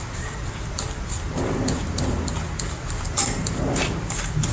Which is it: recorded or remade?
remade